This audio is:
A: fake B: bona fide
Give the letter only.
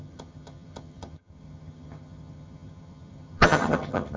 A